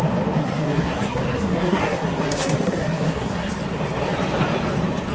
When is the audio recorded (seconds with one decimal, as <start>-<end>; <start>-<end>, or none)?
0.0-0.4; 3.5-5.1